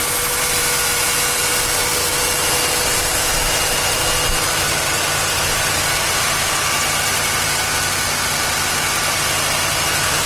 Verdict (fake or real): real